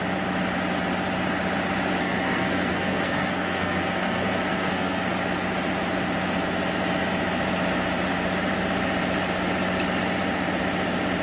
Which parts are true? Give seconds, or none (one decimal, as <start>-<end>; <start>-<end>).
0.0-2.0; 5.0-11.2